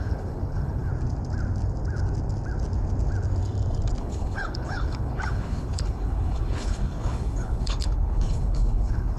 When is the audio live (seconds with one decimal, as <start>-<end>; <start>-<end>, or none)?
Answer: 0.9-4.0